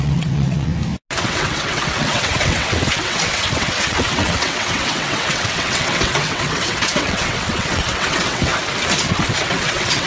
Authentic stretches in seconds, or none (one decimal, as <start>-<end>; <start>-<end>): 0.7-1.2; 8.5-9.0